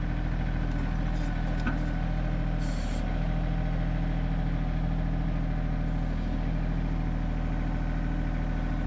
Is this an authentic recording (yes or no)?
yes